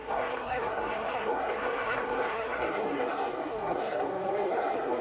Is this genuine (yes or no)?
no